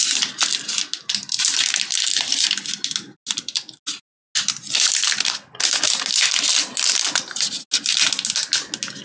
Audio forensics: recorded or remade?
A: recorded